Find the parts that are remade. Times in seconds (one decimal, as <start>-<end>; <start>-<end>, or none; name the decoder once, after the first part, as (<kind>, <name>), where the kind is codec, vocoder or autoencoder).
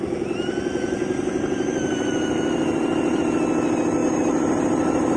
1.0-3.2 (vocoder, BigVGAN v2); 4.0-5.2